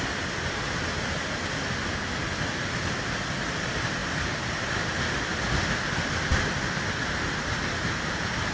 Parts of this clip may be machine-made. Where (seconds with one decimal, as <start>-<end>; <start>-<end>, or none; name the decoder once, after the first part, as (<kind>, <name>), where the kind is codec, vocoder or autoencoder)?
none